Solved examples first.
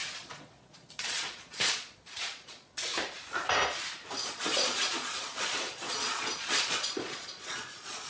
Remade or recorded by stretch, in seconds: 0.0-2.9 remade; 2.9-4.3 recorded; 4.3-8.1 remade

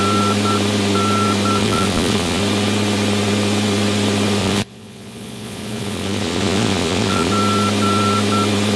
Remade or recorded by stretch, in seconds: 0.0-1.6 recorded; 1.6-2.4 remade; 2.4-4.4 recorded; 4.4-7.3 remade; 7.3-8.8 recorded

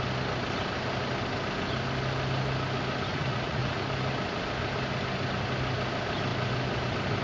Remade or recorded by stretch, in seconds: 0.0-3.1 recorded; 3.1-3.8 remade; 3.8-7.2 recorded

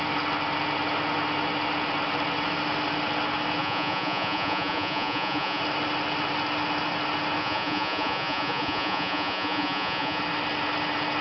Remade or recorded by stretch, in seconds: 0.0-3.6 recorded; 3.6-5.6 remade; 5.6-7.4 recorded; 7.4-10.2 remade; 10.2-11.2 recorded

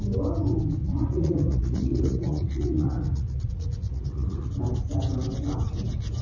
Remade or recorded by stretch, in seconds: 0.0-0.8 recorded; 0.8-4.5 remade; 4.5-6.2 recorded

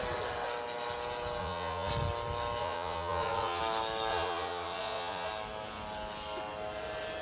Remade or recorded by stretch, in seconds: 0.0-1.4 recorded; 1.4-1.9 remade; 1.9-2.6 recorded; 2.6-3.6 remade; 3.6-4.1 recorded; 4.1-5.3 remade; 5.3-7.2 recorded